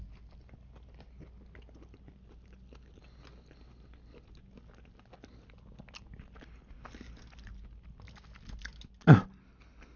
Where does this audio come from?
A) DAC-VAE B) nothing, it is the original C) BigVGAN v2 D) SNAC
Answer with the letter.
B